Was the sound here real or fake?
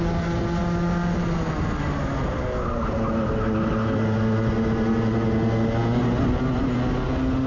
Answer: real